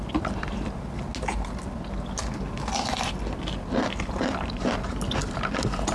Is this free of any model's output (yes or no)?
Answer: yes